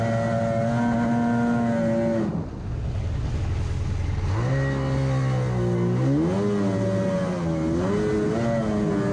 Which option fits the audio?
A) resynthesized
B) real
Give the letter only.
B